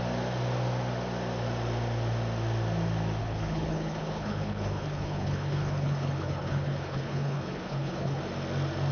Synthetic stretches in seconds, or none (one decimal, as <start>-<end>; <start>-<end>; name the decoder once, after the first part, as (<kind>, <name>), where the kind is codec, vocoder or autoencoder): 3.2-8.2 (codec, HILCodec)